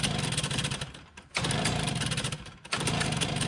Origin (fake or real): fake